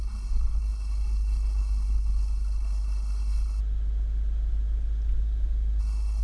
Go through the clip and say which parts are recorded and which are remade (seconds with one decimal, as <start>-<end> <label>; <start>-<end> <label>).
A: 0.0-3.6 remade; 3.6-5.8 recorded; 5.8-6.2 remade